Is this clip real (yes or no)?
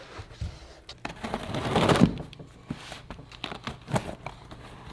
yes